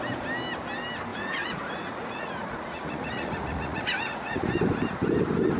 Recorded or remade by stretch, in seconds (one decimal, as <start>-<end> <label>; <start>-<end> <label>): 0.0-1.1 recorded; 1.1-4.5 remade; 4.5-5.6 recorded